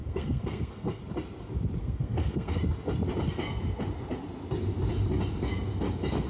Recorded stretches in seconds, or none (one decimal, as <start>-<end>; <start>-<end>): 1.0-1.8; 2.6-6.3